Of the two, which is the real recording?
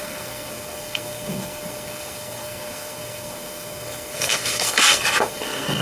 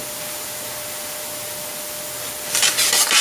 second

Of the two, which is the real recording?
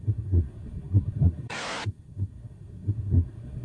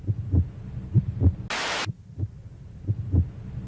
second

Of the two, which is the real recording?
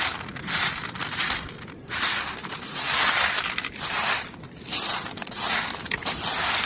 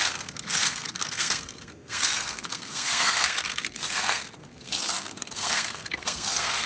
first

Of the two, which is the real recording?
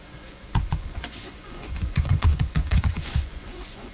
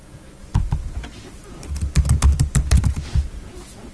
second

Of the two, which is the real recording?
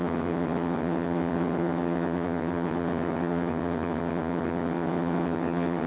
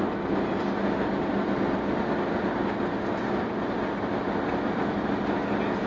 second